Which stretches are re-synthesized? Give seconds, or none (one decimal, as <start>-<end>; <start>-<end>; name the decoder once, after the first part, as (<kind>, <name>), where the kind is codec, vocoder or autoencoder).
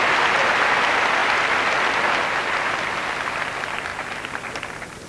3.9-4.5 (vocoder, BigVGAN v2)